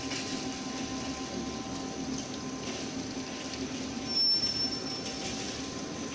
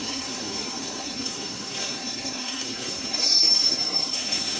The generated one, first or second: second